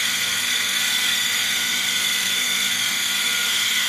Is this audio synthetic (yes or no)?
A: yes